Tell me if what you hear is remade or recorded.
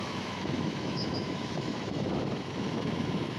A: remade